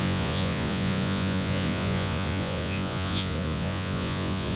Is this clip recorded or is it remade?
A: remade